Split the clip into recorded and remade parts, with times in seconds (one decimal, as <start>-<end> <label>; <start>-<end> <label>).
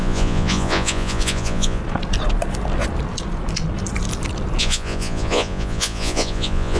0.0-1.8 remade; 1.8-4.6 recorded; 4.6-6.8 remade